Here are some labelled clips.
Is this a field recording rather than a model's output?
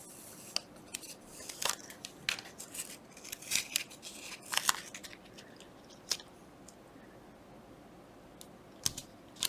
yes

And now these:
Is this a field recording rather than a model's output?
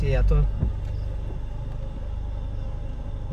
yes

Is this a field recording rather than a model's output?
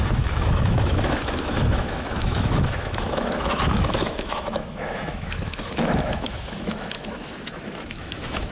no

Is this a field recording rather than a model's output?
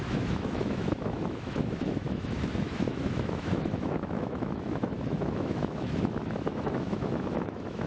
no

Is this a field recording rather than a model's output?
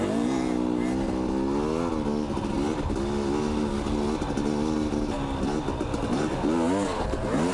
yes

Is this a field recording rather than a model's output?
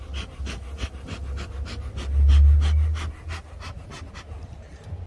yes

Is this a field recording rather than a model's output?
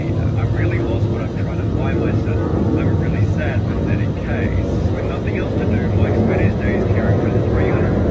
yes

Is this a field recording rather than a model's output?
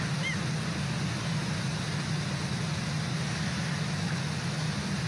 yes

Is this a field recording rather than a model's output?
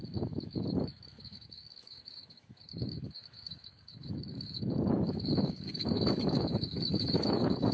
no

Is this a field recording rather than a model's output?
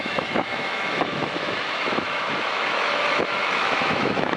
no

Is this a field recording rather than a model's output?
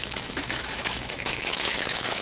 no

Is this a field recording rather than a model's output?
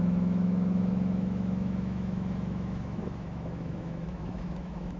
no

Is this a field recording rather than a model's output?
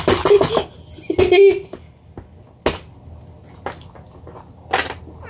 yes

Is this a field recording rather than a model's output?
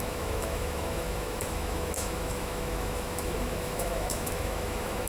no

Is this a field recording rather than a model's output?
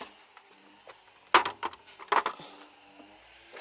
yes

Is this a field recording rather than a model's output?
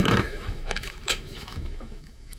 no